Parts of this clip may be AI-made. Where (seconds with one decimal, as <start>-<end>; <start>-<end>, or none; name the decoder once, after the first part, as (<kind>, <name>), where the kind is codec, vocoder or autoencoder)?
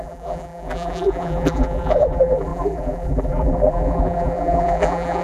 0.0-5.2 (vocoder, BigVGAN v2)